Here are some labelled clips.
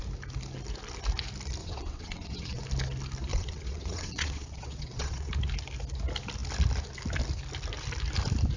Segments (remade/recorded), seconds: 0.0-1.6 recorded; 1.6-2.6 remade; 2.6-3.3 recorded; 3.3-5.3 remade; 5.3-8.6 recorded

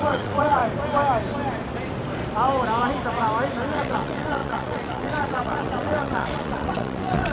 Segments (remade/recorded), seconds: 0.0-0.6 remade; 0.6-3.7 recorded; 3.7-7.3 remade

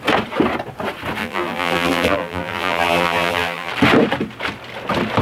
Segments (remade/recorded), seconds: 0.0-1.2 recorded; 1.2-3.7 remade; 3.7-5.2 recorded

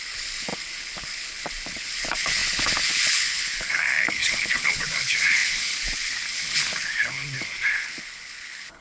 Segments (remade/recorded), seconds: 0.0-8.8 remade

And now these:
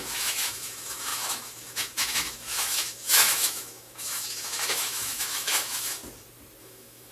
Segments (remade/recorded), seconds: 0.0-6.0 remade; 6.0-6.6 recorded; 6.6-7.1 remade